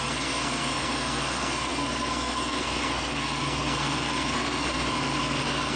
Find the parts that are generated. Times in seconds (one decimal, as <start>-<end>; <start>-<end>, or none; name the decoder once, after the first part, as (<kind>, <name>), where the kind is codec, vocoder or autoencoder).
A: 0.0-5.8 (codec, SNAC)